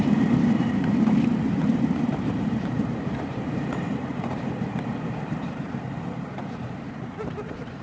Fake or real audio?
fake